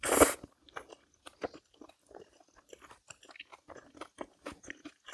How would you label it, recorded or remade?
recorded